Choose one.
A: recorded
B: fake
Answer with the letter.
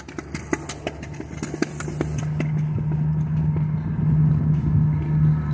A